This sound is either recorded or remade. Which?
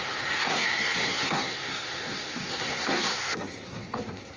remade